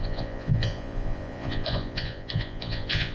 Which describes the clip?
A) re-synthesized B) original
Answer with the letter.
A